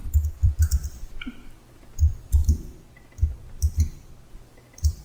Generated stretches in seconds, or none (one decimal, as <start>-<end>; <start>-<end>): 0.0-2.4; 4.3-5.0